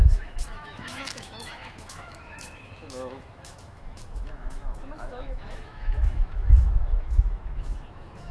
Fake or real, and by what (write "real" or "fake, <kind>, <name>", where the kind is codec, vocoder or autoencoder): fake, autoencoder, DAC-VAE